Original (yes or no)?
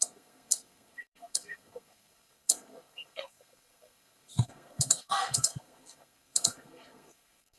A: no